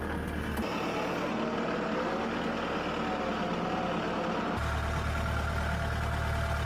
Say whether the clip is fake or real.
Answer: real